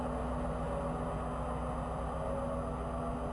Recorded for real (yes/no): yes